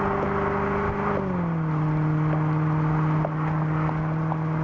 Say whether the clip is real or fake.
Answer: real